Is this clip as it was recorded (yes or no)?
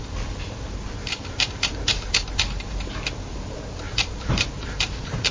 no